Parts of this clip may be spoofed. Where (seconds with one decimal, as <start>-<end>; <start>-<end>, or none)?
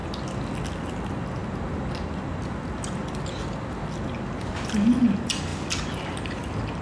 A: none